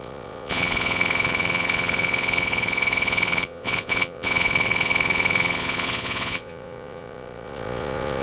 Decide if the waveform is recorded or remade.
remade